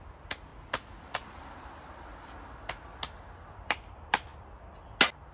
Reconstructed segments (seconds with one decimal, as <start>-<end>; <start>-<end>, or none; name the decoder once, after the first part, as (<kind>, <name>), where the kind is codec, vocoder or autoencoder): 0.0-0.5 (vocoder, BigVGAN v2); 3.5-4.3